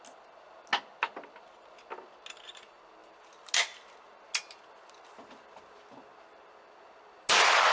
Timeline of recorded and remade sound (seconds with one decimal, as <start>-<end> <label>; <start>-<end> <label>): 0.0-7.7 recorded